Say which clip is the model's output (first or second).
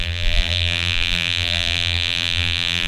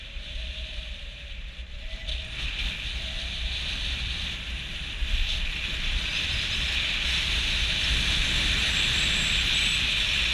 first